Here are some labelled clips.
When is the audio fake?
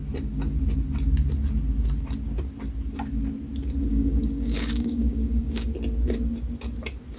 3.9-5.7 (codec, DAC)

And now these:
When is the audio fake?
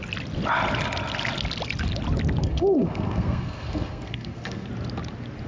2.4-4.7 (codec, SNAC)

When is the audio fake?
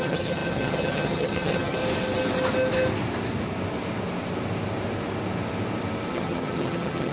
0.0-1.8 (vocoder, HiFi-GAN); 6.1-7.1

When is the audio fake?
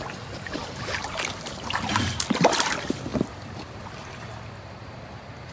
none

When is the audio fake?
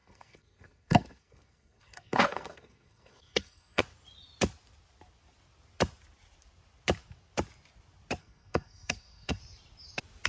0.0-3.8 (codec, SNAC); 8.2-9.4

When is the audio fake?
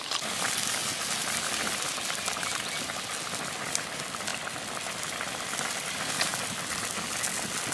0.0-0.8 (vocoder, BigVGAN v2); 3.7-4.3; 5.0-6.3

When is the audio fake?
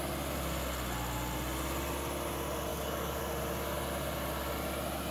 2.7-3.2 (codec, DAC)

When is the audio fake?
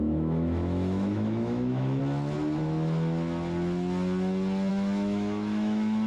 0.0-2.0 (autoencoder, DAC-VAE); 4.7-6.1